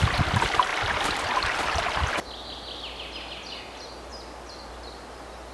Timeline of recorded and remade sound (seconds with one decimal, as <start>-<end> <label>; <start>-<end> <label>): 0.0-5.5 recorded